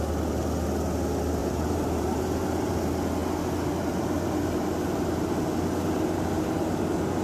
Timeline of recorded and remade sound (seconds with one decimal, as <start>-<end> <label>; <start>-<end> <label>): 0.0-1.4 recorded; 1.4-2.7 remade; 2.7-4.4 recorded; 4.4-5.4 remade; 5.4-7.2 recorded

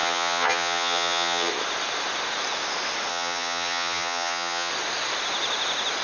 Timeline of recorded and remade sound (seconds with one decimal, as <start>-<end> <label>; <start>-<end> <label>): 0.0-1.5 remade; 1.5-3.1 recorded; 3.1-4.7 remade; 4.7-6.0 recorded